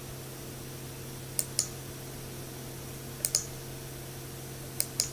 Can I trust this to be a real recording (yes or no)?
yes